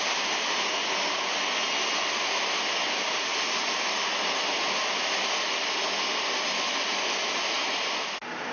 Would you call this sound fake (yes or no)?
no